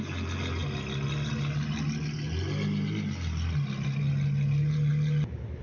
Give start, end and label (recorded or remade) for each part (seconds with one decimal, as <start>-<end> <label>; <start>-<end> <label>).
0.0-5.6 recorded